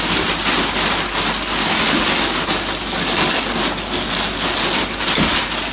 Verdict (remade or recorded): recorded